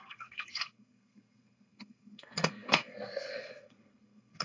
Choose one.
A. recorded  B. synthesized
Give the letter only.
B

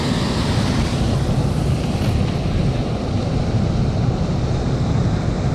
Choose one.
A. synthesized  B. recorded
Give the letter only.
B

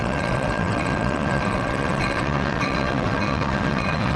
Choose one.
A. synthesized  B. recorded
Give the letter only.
A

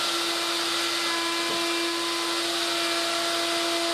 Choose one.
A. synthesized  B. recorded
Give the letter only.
B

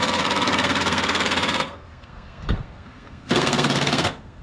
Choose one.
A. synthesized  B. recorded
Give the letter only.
A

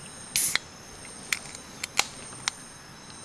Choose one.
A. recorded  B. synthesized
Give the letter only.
A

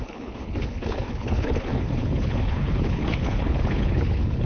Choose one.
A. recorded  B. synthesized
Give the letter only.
B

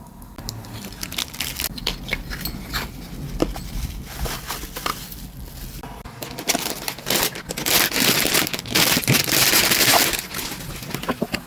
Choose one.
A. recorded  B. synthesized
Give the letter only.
A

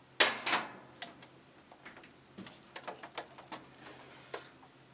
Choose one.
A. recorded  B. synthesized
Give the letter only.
A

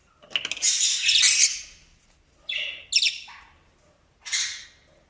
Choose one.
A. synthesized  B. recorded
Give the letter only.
B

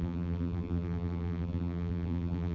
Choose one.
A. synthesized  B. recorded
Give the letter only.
A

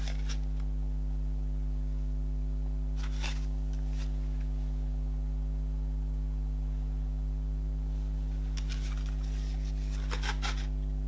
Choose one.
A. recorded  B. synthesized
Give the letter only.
A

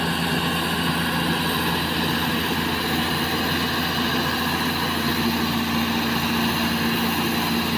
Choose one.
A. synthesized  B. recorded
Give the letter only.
B